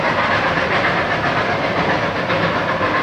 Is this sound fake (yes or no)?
no